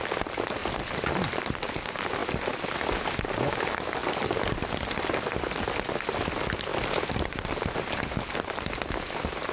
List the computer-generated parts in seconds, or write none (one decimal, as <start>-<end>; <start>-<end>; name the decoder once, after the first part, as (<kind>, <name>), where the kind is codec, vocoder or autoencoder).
0.6-1.8 (vocoder, BigVGAN v2); 6.7-8.0